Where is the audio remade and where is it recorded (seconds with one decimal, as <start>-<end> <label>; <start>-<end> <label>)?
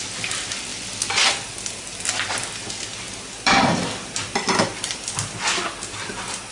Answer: 0.0-3.7 recorded; 3.7-5.1 remade; 5.1-6.5 recorded